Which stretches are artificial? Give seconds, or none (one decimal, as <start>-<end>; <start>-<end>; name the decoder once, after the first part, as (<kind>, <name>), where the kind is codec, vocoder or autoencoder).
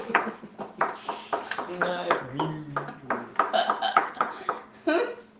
0.0-0.5 (codec, HILCodec); 1.8-2.3; 3.9-4.6